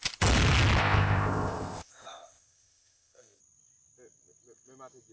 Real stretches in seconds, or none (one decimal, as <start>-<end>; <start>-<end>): 0.0-0.8; 3.4-5.1